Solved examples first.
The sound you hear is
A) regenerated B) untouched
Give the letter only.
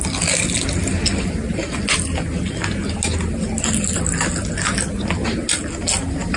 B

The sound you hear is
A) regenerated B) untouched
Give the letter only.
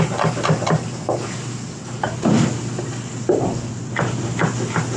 B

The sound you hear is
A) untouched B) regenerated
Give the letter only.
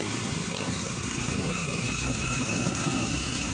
B